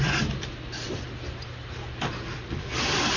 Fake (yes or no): no